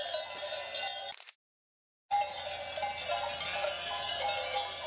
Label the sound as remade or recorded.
recorded